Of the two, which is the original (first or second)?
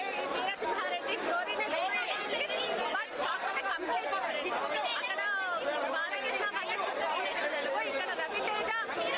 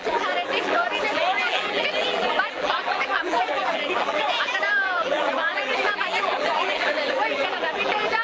first